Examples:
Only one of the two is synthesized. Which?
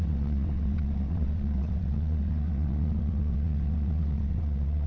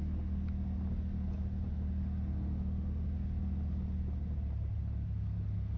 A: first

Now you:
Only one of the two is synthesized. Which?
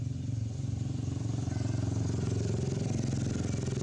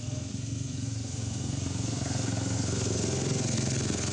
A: second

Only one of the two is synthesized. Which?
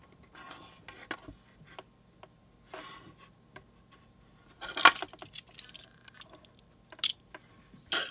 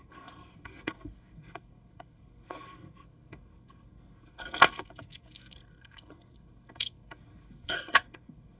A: second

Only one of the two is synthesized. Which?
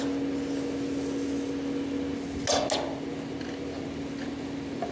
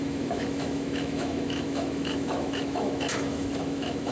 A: second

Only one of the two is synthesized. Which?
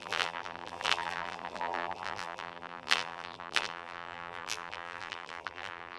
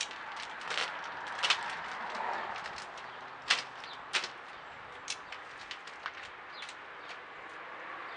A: first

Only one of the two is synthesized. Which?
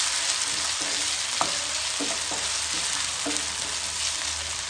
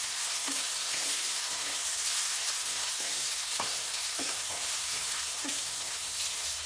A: second